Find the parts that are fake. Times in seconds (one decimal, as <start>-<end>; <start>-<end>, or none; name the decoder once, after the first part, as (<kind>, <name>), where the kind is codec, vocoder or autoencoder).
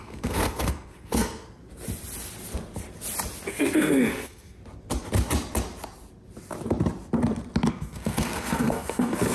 0.0-1.6 (codec, SNAC); 3.5-4.6; 7.7-9.3